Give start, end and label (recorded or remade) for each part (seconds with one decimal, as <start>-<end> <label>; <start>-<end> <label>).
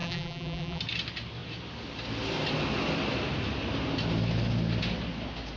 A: 0.0-0.8 remade; 0.8-5.6 recorded